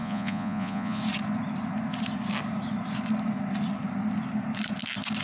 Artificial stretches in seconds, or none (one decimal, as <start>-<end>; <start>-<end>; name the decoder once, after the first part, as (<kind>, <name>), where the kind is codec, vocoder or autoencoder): 0.0-1.0 (vocoder, Vocos)

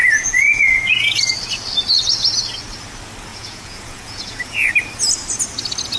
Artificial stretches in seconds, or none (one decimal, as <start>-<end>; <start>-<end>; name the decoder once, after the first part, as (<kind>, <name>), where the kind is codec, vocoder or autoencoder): 0.0-1.2 (vocoder, Vocos); 3.3-4.7

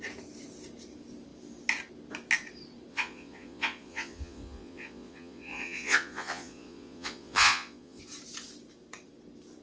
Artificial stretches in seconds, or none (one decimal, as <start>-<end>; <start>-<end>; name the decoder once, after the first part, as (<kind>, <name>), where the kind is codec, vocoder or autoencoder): 2.9-8.0 (vocoder, Vocos)

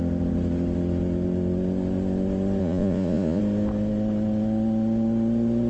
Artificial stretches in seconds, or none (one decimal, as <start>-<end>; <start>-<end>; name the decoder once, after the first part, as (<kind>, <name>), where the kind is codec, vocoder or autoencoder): 2.6-3.4 (vocoder, Vocos)

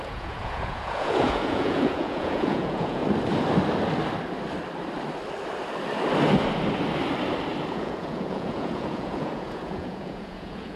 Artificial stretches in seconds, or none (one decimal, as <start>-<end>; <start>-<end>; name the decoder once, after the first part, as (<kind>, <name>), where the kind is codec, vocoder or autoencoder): 0.0-3.0 (vocoder, Vocos); 7.7-10.8